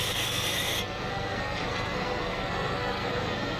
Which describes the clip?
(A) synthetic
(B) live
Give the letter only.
A